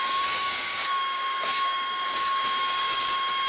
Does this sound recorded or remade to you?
remade